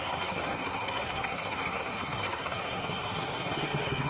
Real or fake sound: fake